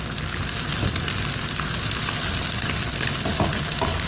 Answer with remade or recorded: recorded